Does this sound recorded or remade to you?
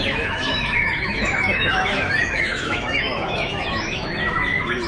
remade